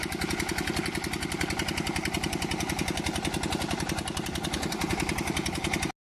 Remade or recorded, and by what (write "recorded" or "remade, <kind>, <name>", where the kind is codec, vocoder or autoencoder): recorded